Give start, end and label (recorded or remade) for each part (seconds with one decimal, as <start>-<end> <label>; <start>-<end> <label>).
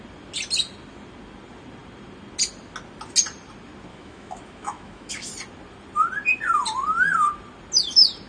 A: 0.0-3.9 recorded; 3.9-5.3 remade; 5.3-8.3 recorded